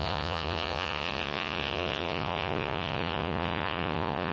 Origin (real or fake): fake